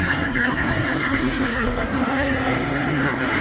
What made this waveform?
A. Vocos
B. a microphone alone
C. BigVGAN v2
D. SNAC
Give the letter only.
D